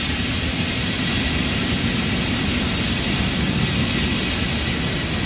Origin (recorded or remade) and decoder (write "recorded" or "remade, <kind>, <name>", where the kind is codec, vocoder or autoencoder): recorded